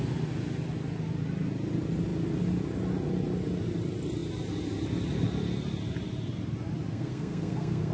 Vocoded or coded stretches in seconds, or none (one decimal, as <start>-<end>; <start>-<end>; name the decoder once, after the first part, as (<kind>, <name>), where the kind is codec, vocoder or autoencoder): 6.9-7.9 (codec, SNAC)